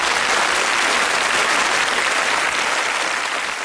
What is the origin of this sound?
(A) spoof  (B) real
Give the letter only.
B